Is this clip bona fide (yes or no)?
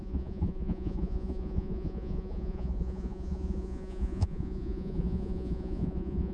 no